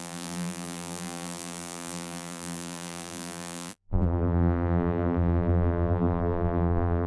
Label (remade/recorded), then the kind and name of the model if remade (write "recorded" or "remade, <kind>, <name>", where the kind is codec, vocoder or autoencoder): remade, vocoder, BigVGAN v2